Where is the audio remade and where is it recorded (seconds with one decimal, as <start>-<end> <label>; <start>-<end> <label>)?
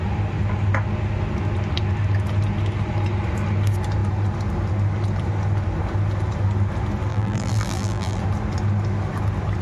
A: 0.0-7.1 recorded; 7.1-8.2 remade; 8.2-9.6 recorded